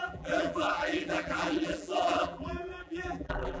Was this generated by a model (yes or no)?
yes